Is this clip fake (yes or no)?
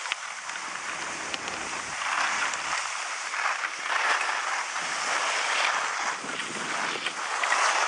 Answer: no